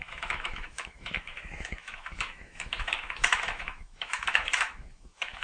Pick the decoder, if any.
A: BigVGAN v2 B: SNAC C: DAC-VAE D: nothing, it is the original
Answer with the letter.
C